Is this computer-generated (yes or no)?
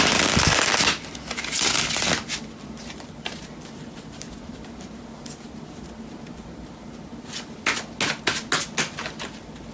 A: no